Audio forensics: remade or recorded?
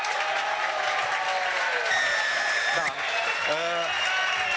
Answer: recorded